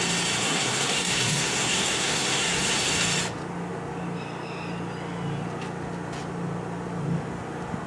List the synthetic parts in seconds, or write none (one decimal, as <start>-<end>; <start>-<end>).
0.4-2.9